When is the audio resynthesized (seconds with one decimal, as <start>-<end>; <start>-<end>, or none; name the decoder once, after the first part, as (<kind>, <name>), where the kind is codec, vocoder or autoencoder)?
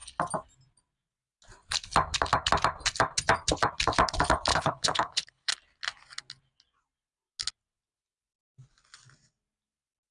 4.5-5.5 (codec, HILCodec)